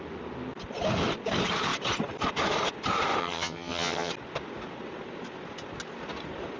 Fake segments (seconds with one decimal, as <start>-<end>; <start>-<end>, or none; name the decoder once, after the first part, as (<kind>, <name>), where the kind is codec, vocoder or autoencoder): 3.2-4.1 (vocoder, HiFi-GAN)